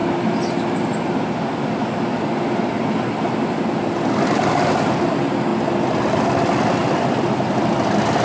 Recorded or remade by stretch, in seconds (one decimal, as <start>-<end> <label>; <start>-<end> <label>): 0.0-8.2 recorded